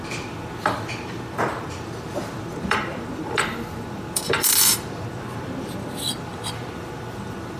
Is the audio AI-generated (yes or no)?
yes